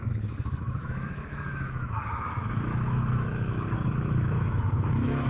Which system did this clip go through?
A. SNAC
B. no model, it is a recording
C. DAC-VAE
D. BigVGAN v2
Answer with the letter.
C